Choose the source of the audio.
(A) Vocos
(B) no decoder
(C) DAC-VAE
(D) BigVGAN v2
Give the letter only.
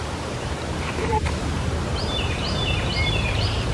D